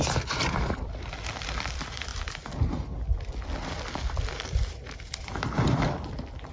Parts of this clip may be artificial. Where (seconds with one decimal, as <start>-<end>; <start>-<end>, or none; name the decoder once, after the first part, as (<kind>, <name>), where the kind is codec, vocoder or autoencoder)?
0.5-2.1 (vocoder, BigVGAN v2); 4.4-6.5